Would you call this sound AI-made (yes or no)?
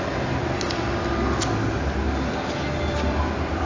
no